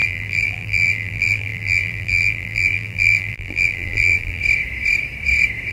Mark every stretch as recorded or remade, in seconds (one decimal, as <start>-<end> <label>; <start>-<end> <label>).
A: 0.0-4.4 remade; 4.4-5.7 recorded

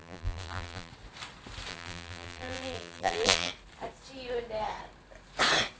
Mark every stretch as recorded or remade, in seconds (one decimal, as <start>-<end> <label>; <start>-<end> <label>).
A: 0.0-0.9 remade; 0.9-1.7 recorded; 1.7-3.5 remade; 3.5-5.8 recorded